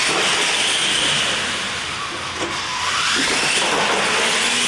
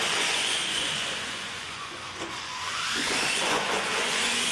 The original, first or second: first